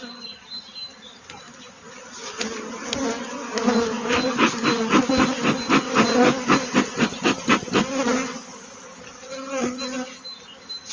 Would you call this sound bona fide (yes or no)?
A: yes